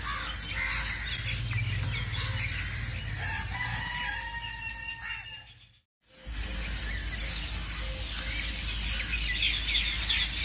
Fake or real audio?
real